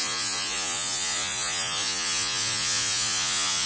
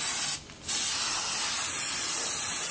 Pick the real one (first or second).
second